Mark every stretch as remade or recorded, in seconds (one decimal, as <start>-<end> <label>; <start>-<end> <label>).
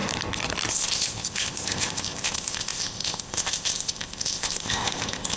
0.0-0.7 recorded; 0.7-5.4 remade